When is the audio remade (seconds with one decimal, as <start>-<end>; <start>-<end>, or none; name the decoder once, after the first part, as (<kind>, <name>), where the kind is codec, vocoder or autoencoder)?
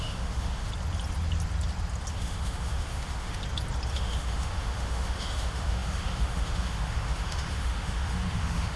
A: 0.0-0.7 (autoencoder, DAC-VAE); 2.1-3.4; 3.9-8.8